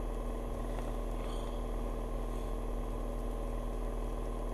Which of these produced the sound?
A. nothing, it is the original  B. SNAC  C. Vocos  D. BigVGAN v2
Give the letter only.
A